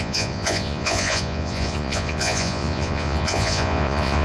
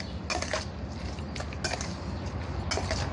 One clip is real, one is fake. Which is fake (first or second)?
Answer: first